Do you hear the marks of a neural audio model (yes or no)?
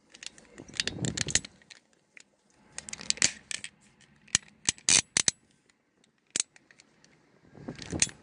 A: no